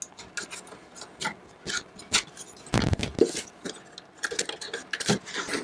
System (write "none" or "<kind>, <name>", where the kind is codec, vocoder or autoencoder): none